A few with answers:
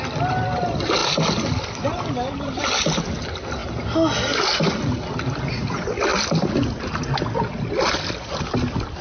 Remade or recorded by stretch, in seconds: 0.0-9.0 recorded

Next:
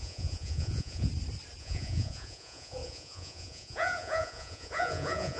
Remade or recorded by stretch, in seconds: 0.0-1.1 remade; 1.1-1.6 recorded; 1.6-5.4 remade

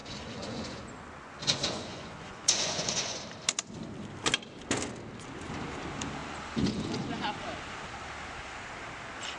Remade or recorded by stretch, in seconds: 0.0-3.2 remade; 3.2-6.2 recorded; 6.2-6.9 remade; 6.9-9.4 recorded

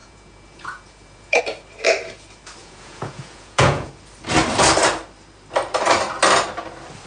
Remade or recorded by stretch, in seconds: 0.0-1.4 remade; 1.4-2.6 recorded; 2.6-3.9 remade; 3.9-7.1 recorded

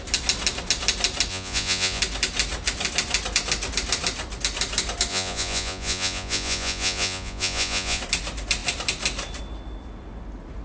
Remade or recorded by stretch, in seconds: 0.0-1.3 recorded; 1.3-2.0 remade; 2.0-5.1 recorded; 5.1-8.0 remade; 8.0-10.6 recorded